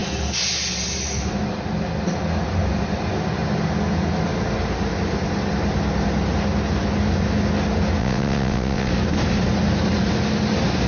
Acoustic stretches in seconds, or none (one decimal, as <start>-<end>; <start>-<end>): 0.0-8.0; 8.9-10.9